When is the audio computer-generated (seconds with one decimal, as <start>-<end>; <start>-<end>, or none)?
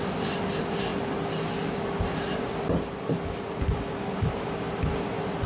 none